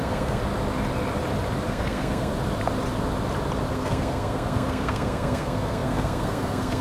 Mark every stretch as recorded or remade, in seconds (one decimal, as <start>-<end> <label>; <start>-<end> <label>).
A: 0.0-0.4 remade; 0.4-1.7 recorded; 1.7-2.3 remade; 2.3-3.7 recorded; 3.7-6.8 remade